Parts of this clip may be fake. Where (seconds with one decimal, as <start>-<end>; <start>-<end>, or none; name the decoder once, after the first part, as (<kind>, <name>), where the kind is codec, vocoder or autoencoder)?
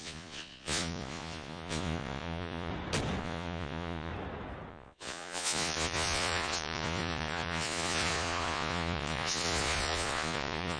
0.0-2.7 (vocoder, Vocos); 3.2-4.1; 4.7-10.8